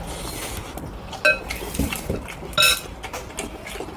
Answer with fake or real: real